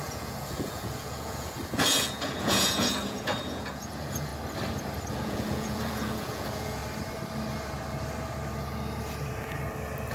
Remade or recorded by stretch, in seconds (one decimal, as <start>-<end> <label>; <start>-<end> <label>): 0.0-4.3 remade; 4.3-5.1 recorded; 5.1-6.8 remade; 6.8-10.1 recorded